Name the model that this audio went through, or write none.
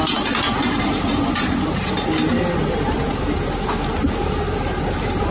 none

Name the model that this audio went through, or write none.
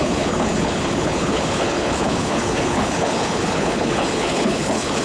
codec, HILCodec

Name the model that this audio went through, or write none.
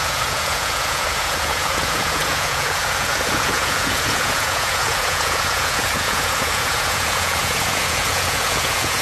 vocoder, Vocos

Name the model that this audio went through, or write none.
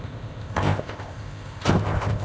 codec, ZipCodec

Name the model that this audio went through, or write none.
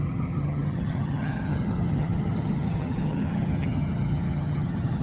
vocoder, HiFi-GAN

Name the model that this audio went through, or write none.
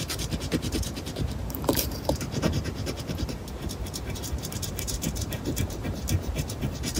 vocoder, BigVGAN v2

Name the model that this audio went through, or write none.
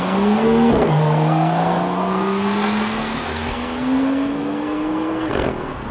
codec, SNAC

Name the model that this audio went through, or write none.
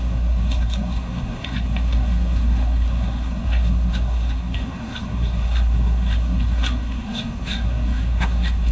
codec, SNAC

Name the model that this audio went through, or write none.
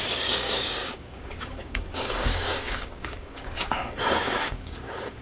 codec, DAC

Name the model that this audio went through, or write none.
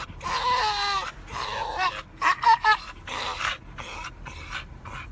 none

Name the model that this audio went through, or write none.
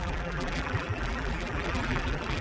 vocoder, BigVGAN v2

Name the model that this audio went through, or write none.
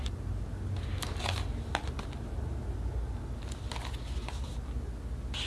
none